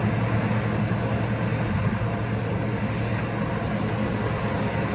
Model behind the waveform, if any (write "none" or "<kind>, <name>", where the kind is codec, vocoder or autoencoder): none